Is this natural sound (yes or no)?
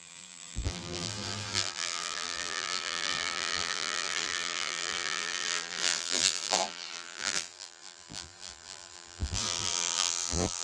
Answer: no